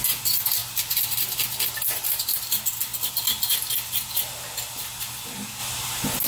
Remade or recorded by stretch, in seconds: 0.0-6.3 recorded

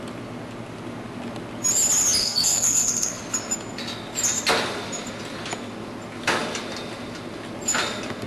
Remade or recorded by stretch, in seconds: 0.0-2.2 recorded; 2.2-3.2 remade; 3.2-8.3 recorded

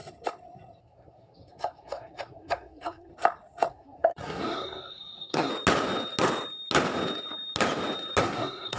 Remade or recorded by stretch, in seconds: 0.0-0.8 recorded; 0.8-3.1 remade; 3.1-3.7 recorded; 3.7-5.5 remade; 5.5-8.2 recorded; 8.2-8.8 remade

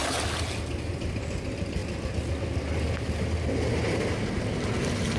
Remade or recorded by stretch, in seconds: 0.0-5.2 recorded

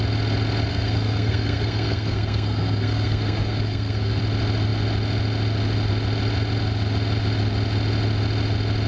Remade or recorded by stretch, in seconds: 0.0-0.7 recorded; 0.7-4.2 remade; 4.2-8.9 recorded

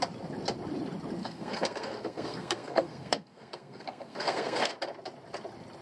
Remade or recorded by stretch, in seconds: 0.0-1.2 recorded; 1.2-4.7 remade; 4.7-5.8 recorded

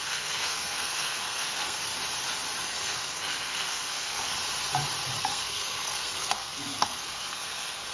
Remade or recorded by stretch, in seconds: 0.0-1.9 remade; 1.9-2.6 recorded; 2.6-4.3 remade; 4.3-5.2 recorded; 5.2-7.9 remade